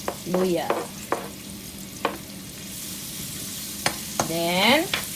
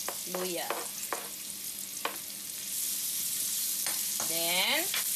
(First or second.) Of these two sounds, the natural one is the second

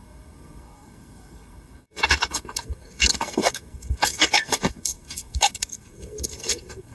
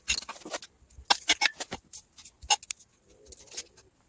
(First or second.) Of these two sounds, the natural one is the second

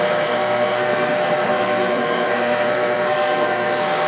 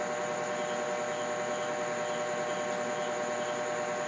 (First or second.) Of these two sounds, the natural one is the second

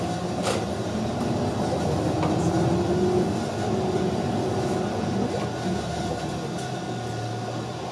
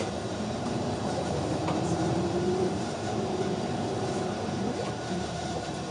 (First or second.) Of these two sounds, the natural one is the first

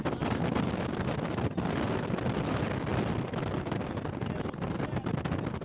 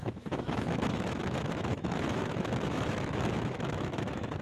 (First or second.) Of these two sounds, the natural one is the first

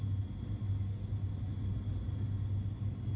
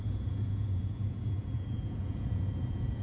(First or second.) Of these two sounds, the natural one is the first